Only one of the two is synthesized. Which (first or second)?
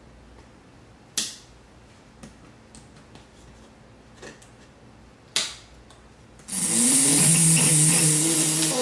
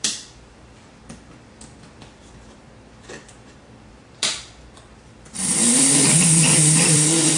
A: second